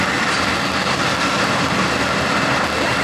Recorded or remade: recorded